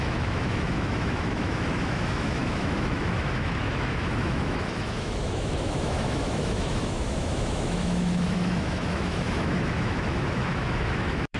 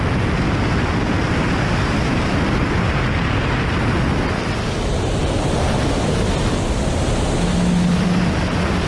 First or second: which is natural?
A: second